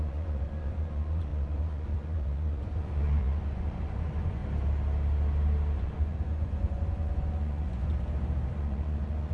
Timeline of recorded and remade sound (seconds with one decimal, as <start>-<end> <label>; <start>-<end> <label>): 0.0-4.4 remade; 4.4-5.8 recorded; 5.8-7.8 remade; 7.8-8.5 recorded; 8.5-9.3 remade